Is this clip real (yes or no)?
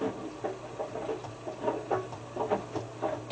yes